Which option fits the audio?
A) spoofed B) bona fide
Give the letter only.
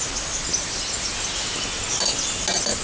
B